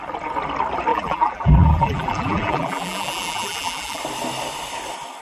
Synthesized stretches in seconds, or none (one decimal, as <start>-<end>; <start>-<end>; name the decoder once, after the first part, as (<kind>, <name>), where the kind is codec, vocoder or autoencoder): 0.9-4.0 (vocoder, BigVGAN v2)